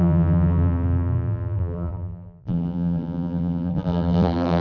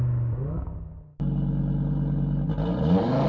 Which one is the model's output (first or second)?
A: first